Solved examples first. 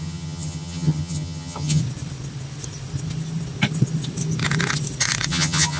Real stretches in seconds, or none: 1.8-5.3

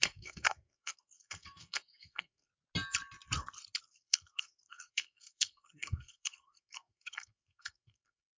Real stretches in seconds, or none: 2.5-3.8

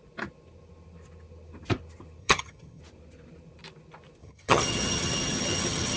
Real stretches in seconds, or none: 0.0-2.2; 2.8-4.2

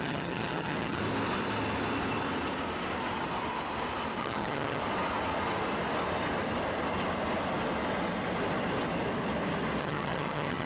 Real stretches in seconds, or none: 1.0-4.2; 4.8-9.8

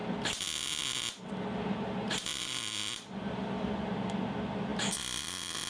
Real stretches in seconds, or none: 0.0-2.3; 3.7-4.7

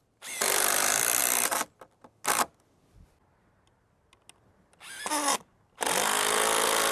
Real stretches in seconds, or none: 0.0-6.9

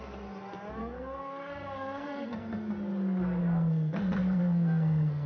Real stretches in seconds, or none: 0.0-0.8; 2.7-3.4